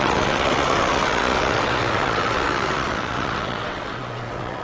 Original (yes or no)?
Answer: no